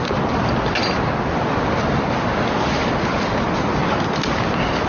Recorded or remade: recorded